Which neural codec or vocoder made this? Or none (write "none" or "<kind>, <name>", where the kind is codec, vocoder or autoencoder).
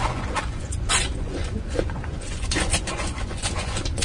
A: vocoder, Vocos